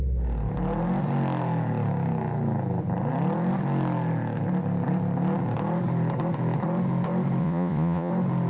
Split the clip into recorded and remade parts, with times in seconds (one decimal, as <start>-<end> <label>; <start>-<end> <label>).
0.0-7.4 recorded; 7.4-8.1 remade; 8.1-8.5 recorded